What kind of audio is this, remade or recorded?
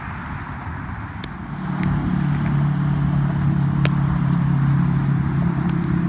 recorded